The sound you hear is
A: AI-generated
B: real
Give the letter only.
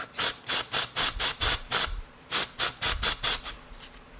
B